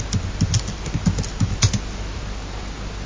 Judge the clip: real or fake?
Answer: real